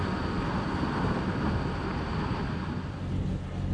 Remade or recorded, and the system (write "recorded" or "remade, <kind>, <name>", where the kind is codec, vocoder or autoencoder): recorded